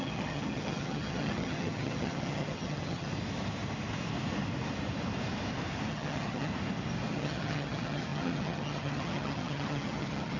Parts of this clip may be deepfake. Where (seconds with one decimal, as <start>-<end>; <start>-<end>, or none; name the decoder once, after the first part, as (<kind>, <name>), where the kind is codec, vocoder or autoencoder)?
0.0-3.1 (vocoder, HiFi-GAN); 5.9-6.5; 7.1-10.4